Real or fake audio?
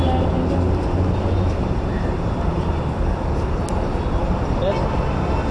real